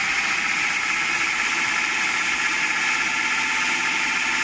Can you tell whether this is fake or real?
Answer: real